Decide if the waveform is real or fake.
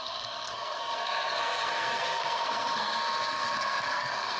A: fake